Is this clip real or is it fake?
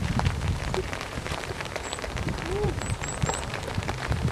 fake